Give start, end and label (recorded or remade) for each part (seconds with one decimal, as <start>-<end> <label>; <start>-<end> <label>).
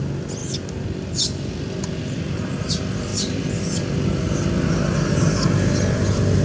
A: 0.0-0.4 recorded; 0.4-2.3 remade; 2.3-3.1 recorded; 3.1-4.1 remade; 4.1-6.4 recorded